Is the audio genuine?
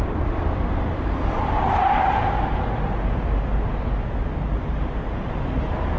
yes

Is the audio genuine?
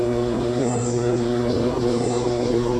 no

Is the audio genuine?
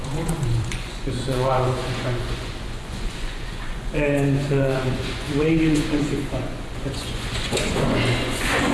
no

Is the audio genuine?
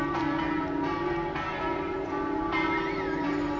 no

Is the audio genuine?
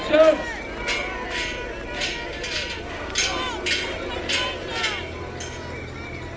yes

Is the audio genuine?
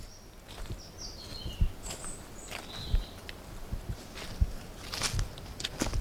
yes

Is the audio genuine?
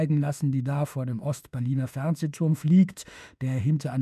no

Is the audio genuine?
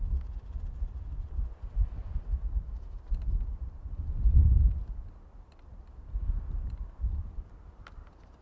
no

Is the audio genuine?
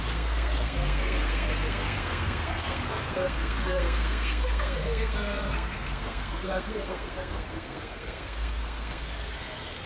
no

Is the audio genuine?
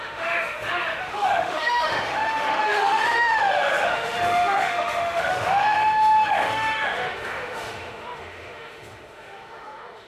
no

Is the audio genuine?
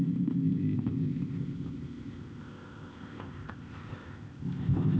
no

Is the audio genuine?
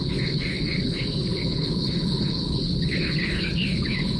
no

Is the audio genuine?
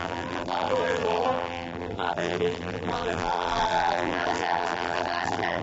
no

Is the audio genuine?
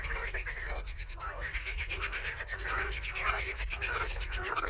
no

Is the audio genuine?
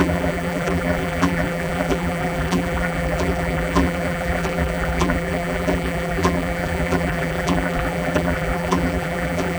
no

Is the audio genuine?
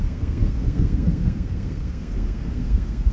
no